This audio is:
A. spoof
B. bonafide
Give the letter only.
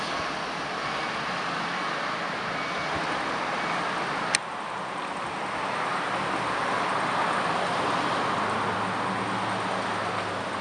B